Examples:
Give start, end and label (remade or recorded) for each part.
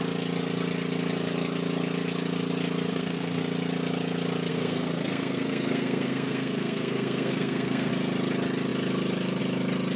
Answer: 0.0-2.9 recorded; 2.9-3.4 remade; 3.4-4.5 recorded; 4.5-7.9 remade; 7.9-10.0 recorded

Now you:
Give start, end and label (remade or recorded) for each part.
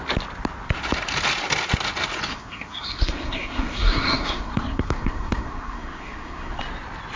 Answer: 0.0-2.3 recorded; 2.3-6.6 remade; 6.6-7.2 recorded